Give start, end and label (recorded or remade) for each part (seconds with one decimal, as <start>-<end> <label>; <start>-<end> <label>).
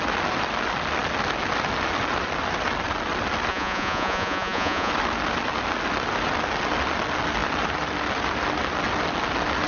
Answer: 0.0-3.5 recorded; 3.5-4.9 remade; 4.9-9.7 recorded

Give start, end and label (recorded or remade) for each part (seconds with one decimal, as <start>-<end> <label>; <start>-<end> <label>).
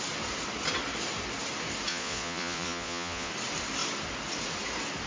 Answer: 0.0-1.9 recorded; 1.9-3.3 remade; 3.3-5.1 recorded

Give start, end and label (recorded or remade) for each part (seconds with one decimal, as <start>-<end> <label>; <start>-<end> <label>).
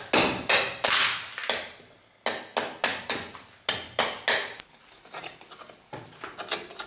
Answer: 0.0-6.9 recorded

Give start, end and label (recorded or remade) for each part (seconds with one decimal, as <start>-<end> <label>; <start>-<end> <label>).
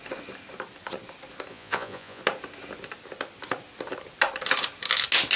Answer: 0.0-1.5 recorded; 1.5-2.2 remade; 2.2-5.4 recorded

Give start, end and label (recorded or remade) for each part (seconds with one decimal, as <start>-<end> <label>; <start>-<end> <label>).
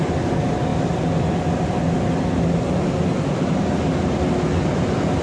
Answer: 0.0-5.2 recorded